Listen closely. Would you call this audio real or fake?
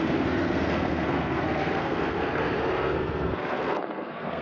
fake